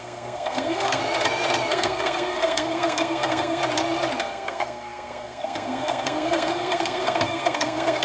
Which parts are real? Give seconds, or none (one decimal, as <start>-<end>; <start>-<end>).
1.0-1.7; 3.6-4.2